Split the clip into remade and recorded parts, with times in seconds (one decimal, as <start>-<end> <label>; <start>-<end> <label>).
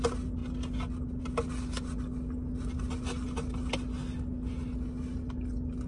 0.0-5.9 recorded